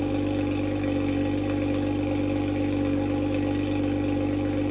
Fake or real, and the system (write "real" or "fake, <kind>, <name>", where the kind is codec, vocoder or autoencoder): real